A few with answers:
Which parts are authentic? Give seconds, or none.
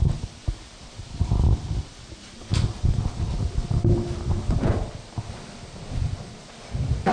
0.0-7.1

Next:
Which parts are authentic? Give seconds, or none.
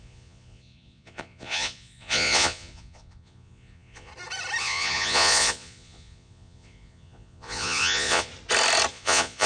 4.1-4.6; 8.3-8.9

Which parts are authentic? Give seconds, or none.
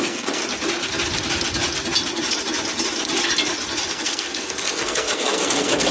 0.4-3.9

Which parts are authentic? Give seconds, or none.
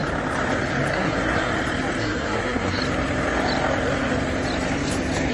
0.0-0.9; 1.5-2.0; 2.8-5.3